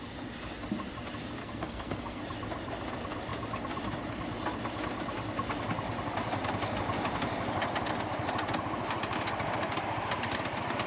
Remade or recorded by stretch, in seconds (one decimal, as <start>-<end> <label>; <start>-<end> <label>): 0.0-1.4 recorded; 1.4-2.2 remade; 2.2-10.9 recorded